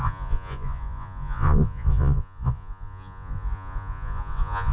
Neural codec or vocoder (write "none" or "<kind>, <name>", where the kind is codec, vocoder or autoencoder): vocoder, Vocos